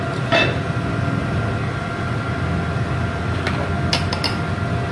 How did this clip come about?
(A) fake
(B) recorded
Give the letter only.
B